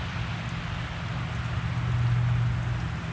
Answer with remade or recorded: recorded